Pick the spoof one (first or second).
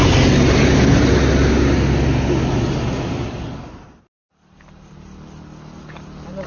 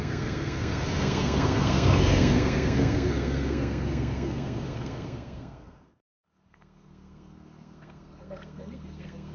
second